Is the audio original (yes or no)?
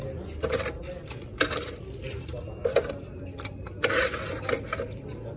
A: yes